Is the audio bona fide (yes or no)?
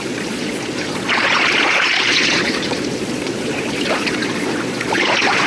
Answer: no